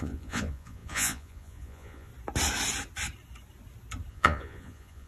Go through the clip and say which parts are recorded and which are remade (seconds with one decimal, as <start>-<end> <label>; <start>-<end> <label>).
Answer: 0.0-2.1 remade; 2.1-4.1 recorded; 4.1-5.1 remade